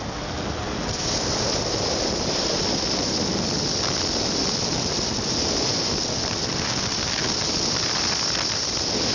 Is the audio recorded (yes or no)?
yes